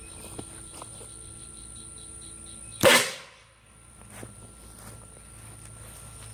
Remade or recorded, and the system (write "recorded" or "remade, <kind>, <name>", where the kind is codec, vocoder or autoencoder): remade, vocoder, BigVGAN v2